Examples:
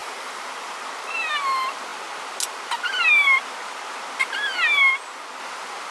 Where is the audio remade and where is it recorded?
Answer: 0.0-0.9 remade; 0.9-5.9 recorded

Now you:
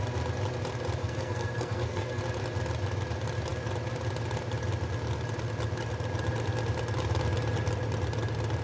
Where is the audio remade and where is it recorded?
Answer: 0.0-1.0 recorded; 1.0-2.2 remade; 2.2-8.6 recorded